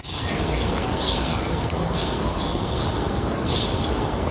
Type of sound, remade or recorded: remade